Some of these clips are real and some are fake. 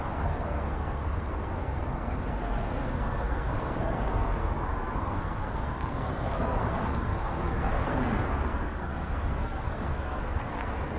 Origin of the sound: fake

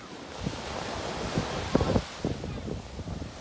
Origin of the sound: real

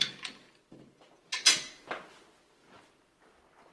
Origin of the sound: real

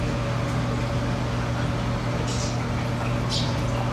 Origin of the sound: real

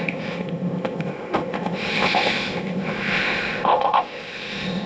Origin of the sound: fake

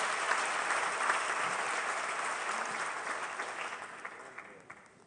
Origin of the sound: real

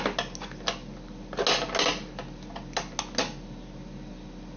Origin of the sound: real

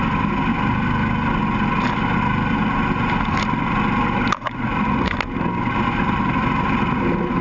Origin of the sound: real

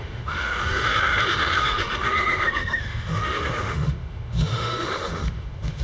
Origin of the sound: fake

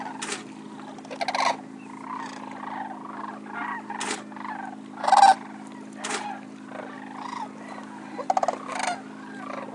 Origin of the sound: real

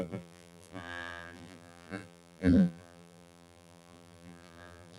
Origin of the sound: fake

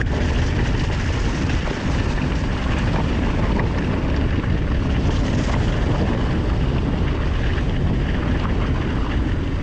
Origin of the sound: real